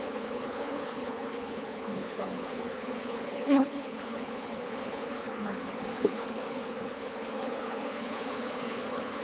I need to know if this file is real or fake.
fake